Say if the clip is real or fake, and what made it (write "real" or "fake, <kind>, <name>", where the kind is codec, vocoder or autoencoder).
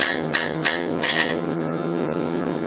fake, vocoder, HiFi-GAN